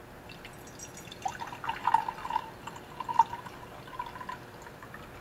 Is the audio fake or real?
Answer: real